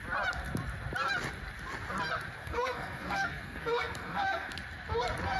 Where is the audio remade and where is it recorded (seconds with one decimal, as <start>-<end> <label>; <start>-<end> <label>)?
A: 0.0-2.4 recorded; 2.4-4.5 remade; 4.5-5.4 recorded